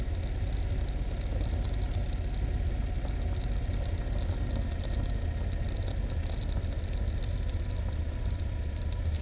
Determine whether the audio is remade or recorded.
recorded